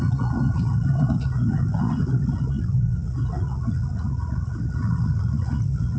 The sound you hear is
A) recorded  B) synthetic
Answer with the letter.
B